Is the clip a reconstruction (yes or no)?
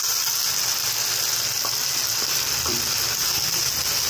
no